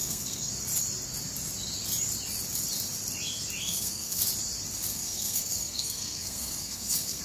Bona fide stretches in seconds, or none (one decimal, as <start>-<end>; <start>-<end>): 0.5-3.6; 4.2-4.9